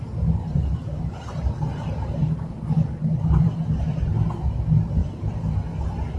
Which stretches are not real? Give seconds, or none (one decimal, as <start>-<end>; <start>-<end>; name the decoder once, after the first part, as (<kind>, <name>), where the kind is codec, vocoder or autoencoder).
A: 0.4-4.1 (vocoder, BigVGAN v2)